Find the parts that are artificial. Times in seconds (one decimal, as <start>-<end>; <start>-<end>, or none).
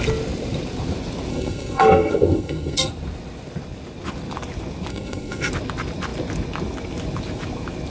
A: 1.3-2.9; 4.9-5.5